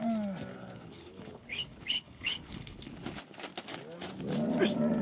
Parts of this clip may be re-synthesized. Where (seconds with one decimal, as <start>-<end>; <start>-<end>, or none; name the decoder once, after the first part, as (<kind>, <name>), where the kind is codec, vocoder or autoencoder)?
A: 0.5-2.9 (codec, HILCodec)